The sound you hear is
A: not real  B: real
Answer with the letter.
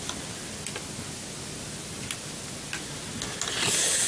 B